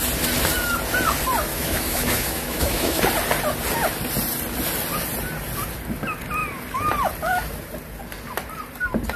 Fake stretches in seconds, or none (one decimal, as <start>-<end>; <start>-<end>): 1.5-3.0